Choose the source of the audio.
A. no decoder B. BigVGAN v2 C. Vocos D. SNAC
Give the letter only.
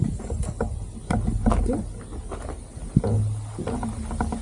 A